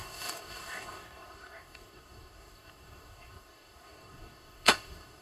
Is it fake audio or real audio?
fake